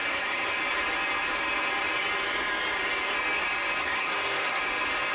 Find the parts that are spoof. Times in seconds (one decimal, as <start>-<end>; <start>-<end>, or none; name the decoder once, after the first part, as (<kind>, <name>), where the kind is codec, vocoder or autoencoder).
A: 0.0-0.6 (codec, SNAC); 3.8-4.6